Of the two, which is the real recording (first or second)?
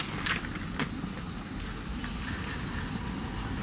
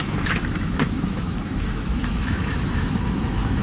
first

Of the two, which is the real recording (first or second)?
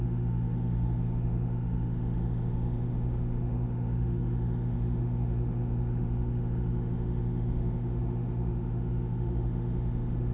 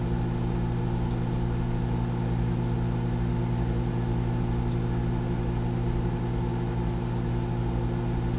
second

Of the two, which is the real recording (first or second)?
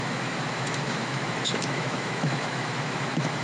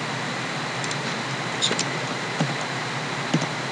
second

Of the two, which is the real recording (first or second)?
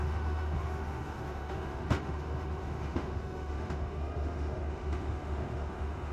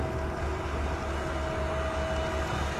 second